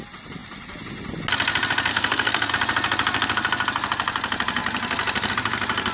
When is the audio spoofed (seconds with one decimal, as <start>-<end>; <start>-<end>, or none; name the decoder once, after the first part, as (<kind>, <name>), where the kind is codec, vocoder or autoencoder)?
1.9-2.5 (codec, SNAC)